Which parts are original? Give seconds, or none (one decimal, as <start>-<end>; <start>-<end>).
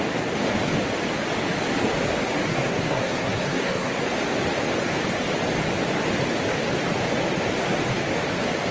0.0-2.5; 4.0-8.7